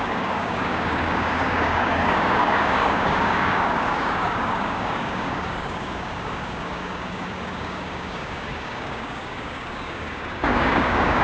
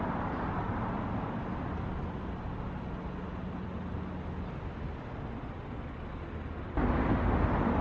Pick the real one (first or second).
second